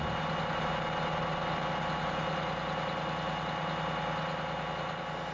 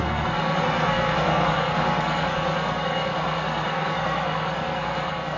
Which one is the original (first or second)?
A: first